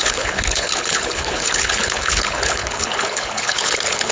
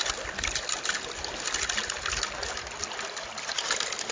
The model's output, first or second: first